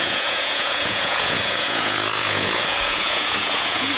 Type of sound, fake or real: fake